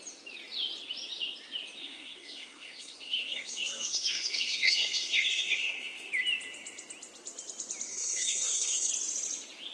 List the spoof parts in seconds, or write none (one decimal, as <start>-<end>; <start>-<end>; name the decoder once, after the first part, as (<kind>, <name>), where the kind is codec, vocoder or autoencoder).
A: 1.8-6.1 (codec, SNAC); 7.9-8.9